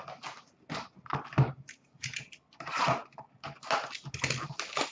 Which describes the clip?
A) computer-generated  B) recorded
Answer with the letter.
B